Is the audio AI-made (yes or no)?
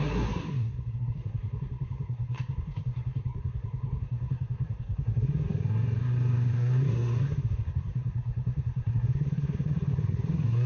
yes